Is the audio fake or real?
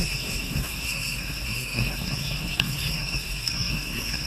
fake